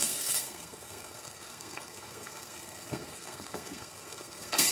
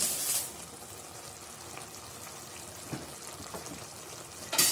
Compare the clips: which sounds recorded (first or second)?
second